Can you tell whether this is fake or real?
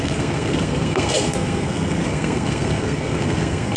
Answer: fake